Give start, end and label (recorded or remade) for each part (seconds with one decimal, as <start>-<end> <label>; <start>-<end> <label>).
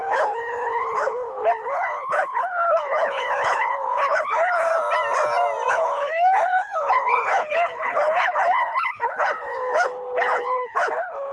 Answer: 0.0-4.7 remade; 4.7-5.7 recorded; 5.7-11.3 remade